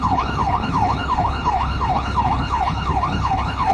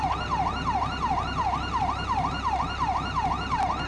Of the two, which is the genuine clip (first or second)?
second